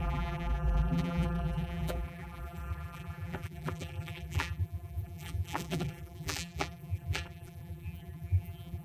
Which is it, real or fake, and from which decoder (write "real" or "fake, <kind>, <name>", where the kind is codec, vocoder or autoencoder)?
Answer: fake, vocoder, BigVGAN v2